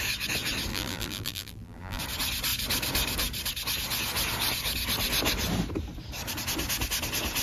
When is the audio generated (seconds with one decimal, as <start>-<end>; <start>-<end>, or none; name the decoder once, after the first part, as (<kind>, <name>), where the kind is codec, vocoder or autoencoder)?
0.7-2.0 (vocoder, BigVGAN v2)